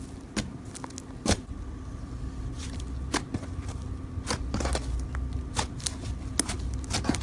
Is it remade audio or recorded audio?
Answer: recorded